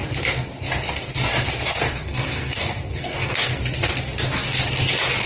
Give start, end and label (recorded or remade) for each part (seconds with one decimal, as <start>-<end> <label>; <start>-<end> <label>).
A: 0.0-2.0 recorded; 2.0-3.6 remade; 3.6-5.3 recorded